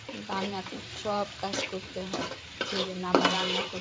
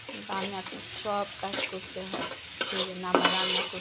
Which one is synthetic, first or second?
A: first